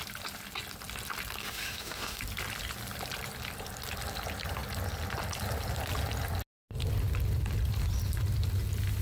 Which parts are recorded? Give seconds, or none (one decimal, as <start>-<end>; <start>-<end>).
0.0-1.4; 2.2-9.0